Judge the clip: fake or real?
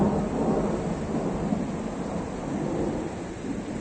real